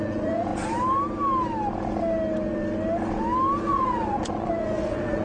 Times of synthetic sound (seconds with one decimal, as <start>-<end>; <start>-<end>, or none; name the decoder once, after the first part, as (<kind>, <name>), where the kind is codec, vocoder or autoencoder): 0.0-0.5 (vocoder, Vocos); 3.6-5.2